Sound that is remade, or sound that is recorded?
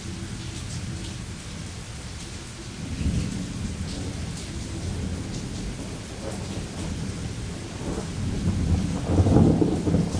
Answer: recorded